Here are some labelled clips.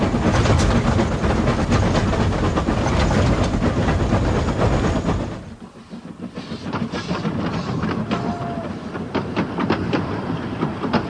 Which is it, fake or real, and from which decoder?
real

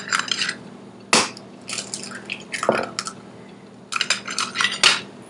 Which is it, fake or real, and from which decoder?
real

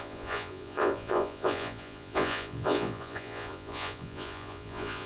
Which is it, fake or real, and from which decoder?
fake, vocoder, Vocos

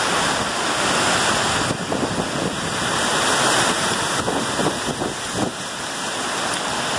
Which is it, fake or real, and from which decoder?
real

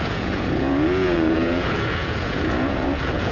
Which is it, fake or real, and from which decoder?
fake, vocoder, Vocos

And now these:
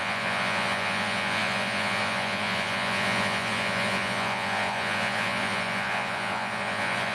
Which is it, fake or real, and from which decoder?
fake, vocoder, Vocos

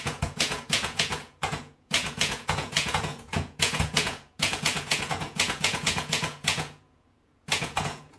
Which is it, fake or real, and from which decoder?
fake, vocoder, Vocos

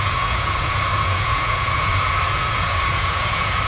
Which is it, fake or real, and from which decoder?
fake, vocoder, Vocos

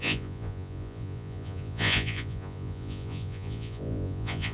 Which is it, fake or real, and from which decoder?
fake, vocoder, Vocos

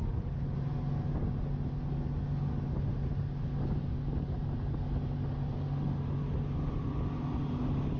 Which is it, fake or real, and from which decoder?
real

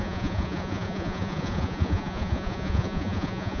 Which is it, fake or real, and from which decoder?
fake, vocoder, Vocos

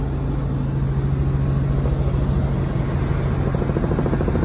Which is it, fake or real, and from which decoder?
real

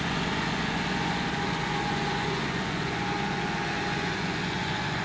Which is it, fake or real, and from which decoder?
fake, vocoder, Vocos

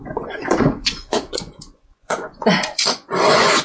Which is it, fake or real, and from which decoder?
fake, vocoder, Vocos